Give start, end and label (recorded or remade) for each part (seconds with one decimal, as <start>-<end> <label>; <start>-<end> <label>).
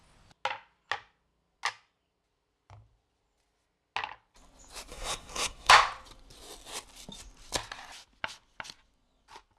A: 0.0-4.9 recorded; 4.9-5.7 remade; 5.7-9.6 recorded